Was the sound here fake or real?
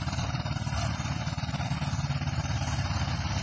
fake